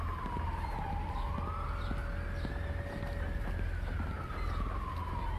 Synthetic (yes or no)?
no